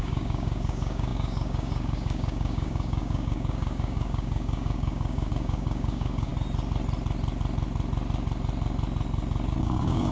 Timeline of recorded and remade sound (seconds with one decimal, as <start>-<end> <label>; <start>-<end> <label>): 0.0-6.3 remade; 6.3-9.6 recorded; 9.6-10.1 remade